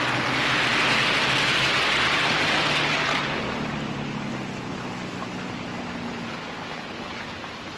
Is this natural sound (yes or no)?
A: yes